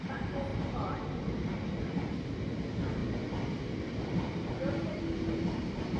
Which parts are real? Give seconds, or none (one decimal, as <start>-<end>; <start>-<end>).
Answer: 0.0-6.0